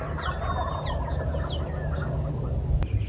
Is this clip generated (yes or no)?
no